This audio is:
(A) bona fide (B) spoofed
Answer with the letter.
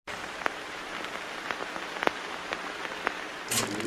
A